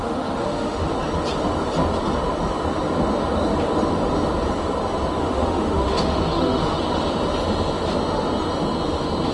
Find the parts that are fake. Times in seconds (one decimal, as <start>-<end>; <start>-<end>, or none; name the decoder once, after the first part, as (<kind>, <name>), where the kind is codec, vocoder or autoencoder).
0.0-0.9 (autoencoder, DAC-VAE); 5.2-6.8